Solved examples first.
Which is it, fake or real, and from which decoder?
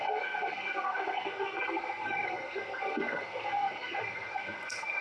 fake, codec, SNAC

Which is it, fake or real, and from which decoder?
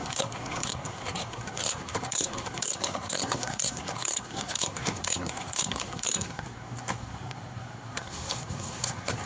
fake, codec, SNAC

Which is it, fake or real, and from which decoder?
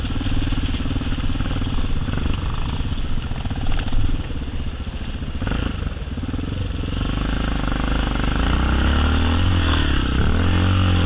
real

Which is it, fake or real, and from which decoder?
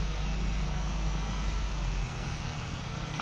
fake, codec, SNAC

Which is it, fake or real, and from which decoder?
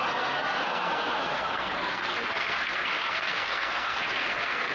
fake, codec, SNAC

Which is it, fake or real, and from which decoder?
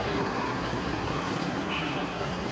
fake, codec, SNAC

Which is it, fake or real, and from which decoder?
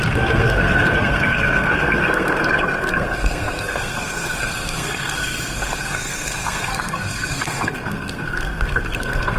fake, codec, SNAC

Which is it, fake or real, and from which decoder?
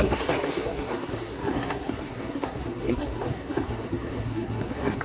fake, codec, SNAC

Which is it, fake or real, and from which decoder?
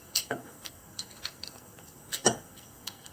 fake, codec, SNAC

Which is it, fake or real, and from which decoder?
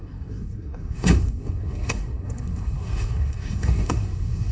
fake, codec, SNAC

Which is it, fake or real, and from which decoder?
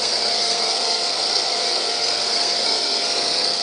fake, codec, SNAC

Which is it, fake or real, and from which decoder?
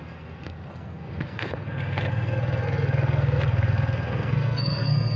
fake, codec, SNAC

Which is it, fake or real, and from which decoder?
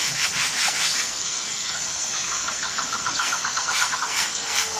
fake, codec, SNAC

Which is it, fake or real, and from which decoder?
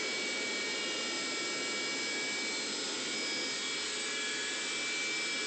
real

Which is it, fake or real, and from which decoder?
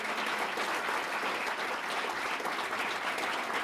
real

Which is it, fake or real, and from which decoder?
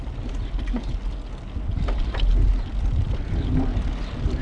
real